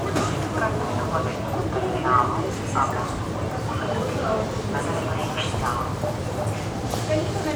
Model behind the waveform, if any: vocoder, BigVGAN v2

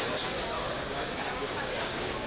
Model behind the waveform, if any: codec, DAC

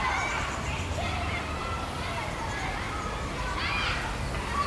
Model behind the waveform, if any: none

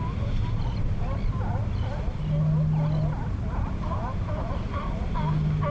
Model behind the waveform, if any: none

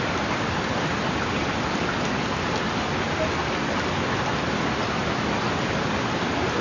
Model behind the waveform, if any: none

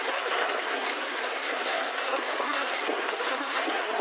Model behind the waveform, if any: codec, SNAC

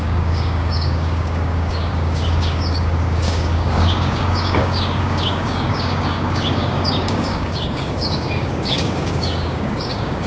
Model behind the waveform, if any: codec, DAC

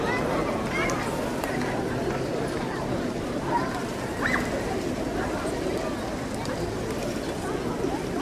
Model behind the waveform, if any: none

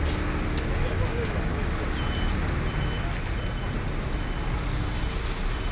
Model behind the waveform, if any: none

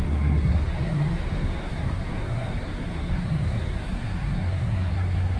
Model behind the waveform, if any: codec, SNAC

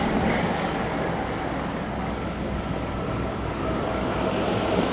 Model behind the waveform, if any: codec, DAC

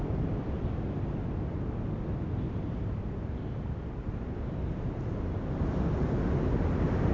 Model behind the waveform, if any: none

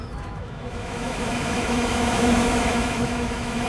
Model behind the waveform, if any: autoencoder, DAC-VAE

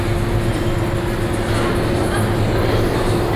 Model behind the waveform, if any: none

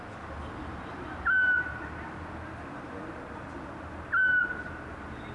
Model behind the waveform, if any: none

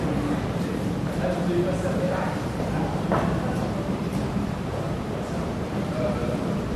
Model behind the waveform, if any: vocoder, BigVGAN v2